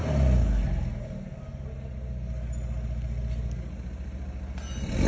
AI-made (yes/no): no